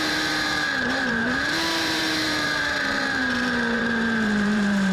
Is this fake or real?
fake